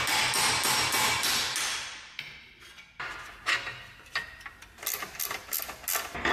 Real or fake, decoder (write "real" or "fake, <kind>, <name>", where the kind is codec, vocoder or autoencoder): real